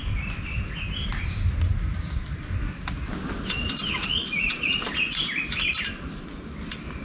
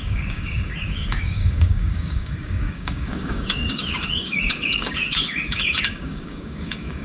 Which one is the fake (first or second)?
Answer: second